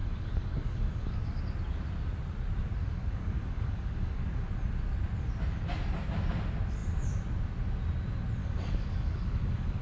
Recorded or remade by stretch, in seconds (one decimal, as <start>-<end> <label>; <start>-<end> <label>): 0.0-1.4 remade; 1.4-2.8 recorded; 2.8-4.4 remade; 4.4-8.4 recorded; 8.4-9.8 remade

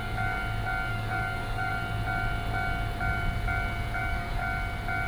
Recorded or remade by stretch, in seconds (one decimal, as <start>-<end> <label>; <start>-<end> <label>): 0.0-0.4 remade; 0.4-0.9 recorded; 0.9-1.7 remade; 1.7-4.0 recorded; 4.0-4.4 remade; 4.4-5.1 recorded

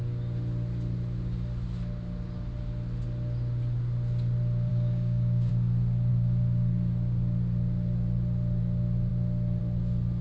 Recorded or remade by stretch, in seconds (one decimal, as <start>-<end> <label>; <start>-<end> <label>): 0.0-4.7 recorded; 4.7-5.5 remade; 5.5-10.2 recorded

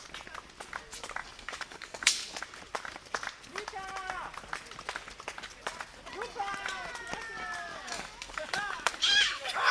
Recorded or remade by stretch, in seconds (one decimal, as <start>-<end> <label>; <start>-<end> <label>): 0.0-1.2 recorded; 1.2-2.4 remade; 2.4-7.7 recorded; 7.7-9.7 remade